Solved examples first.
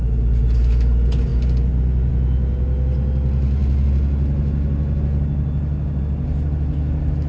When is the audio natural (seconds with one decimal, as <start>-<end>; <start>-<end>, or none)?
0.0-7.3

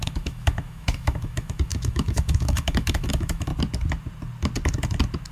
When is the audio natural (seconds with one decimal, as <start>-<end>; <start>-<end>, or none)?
3.5-5.3

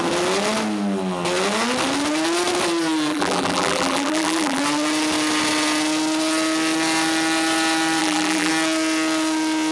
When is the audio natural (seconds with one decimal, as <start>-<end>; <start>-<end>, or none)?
0.0-3.1; 4.6-8.0; 8.5-9.7

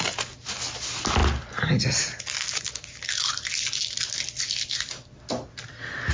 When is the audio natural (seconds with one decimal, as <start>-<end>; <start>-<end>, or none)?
0.0-6.1

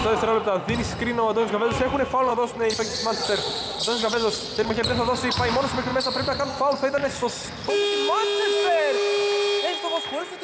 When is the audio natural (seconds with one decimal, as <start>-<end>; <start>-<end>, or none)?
0.0-2.3; 4.9-7.0; 7.5-10.4

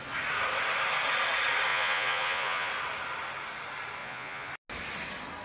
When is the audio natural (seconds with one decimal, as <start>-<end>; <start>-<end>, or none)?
0.0-1.7; 2.7-4.0; 4.5-5.4

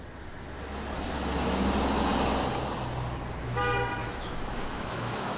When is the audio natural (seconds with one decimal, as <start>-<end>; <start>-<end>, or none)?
0.0-4.0

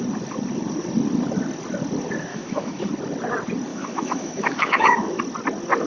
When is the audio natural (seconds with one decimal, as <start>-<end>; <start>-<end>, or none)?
0.0-2.3; 2.9-3.7; 5.2-5.9